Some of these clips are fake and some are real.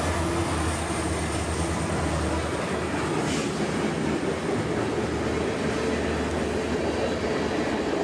real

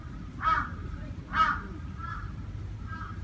fake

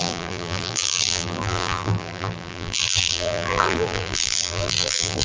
fake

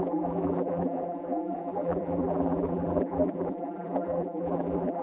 fake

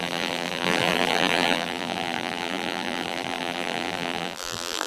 fake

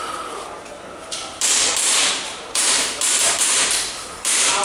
fake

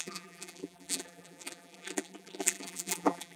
fake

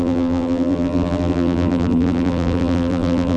fake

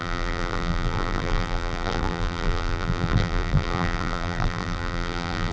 fake